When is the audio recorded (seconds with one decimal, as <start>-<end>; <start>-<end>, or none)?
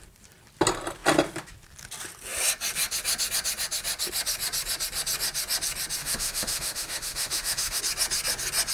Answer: 0.0-6.0; 7.8-8.7